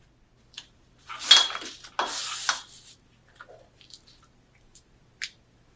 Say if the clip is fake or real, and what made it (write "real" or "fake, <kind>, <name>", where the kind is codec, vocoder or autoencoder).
real